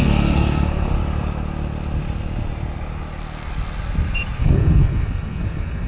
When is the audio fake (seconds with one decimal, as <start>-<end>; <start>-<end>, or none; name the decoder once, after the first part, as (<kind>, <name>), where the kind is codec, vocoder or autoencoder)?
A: 0.0-0.9 (codec, SNAC); 4.4-5.9